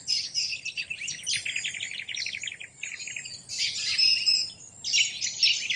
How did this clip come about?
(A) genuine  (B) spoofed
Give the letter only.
A